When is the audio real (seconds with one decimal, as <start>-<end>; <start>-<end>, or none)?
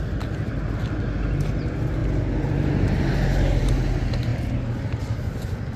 0.0-5.8